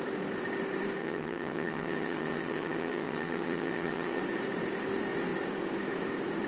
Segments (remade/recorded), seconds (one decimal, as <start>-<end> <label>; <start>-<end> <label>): 0.0-1.0 recorded; 1.0-4.2 remade; 4.2-6.5 recorded